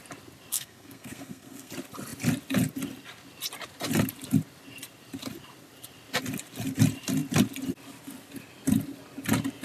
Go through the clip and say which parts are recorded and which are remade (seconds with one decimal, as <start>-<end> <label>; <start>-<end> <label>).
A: 0.0-0.5 recorded; 0.5-1.7 remade; 1.7-9.6 recorded